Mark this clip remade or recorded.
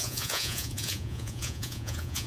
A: remade